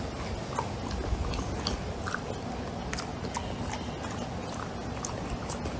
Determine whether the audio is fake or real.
real